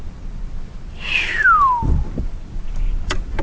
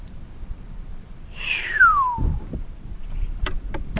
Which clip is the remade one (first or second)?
second